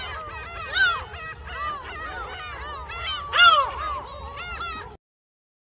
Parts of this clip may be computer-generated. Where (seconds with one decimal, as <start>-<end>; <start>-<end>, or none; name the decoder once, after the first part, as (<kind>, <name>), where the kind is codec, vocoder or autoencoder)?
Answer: none